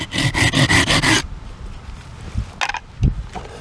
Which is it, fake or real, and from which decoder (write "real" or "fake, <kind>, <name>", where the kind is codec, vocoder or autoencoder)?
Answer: real